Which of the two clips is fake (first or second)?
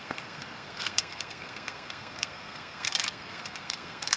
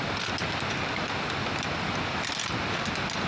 first